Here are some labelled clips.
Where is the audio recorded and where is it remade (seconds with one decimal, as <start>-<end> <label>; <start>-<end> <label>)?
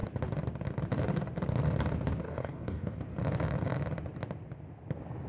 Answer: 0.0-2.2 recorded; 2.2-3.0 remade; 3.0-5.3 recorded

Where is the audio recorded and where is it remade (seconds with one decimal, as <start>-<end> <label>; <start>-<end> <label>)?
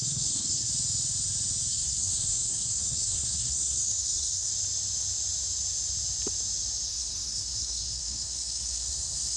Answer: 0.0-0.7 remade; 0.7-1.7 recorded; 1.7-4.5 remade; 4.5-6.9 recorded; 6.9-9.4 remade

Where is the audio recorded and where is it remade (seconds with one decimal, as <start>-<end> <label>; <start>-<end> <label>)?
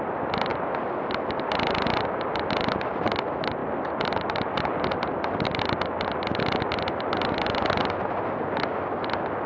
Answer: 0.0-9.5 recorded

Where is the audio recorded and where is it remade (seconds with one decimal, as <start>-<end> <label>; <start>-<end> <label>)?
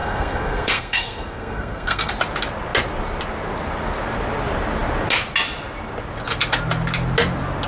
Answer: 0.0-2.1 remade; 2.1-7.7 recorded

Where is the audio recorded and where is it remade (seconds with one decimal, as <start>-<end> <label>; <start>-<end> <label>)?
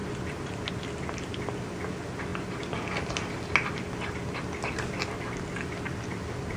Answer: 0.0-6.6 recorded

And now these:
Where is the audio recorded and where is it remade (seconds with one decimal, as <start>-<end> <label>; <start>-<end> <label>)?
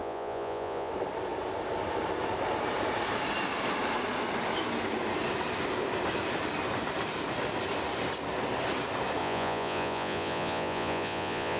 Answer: 0.0-0.9 remade; 0.9-9.2 recorded; 9.2-11.6 remade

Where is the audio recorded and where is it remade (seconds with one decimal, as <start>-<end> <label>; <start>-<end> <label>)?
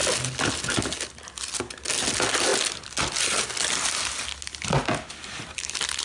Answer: 0.0-6.0 recorded